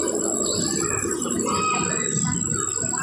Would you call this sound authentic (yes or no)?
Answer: yes